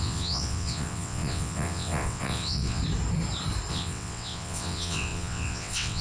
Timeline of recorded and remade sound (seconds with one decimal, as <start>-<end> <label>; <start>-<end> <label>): 0.0-2.8 remade; 2.8-3.7 recorded; 3.7-6.0 remade